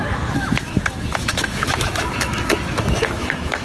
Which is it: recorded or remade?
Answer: remade